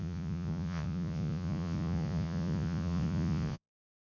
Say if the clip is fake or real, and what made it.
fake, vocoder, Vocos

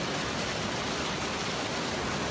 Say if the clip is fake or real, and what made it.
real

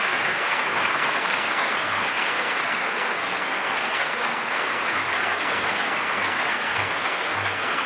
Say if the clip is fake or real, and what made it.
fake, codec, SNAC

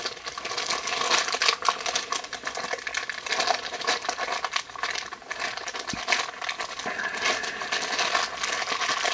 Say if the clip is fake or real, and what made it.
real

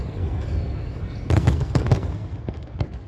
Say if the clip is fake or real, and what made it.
fake, codec, SNAC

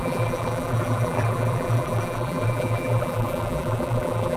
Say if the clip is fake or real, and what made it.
fake, vocoder, BigVGAN v2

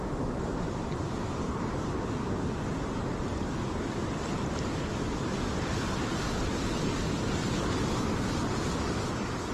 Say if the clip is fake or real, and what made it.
real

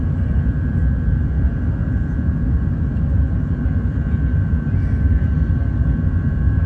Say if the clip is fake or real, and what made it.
real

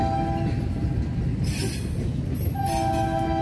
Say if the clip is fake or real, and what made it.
real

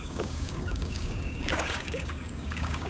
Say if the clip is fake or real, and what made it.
fake, codec, DAC